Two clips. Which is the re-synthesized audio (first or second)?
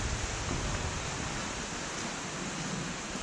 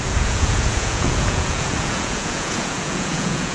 second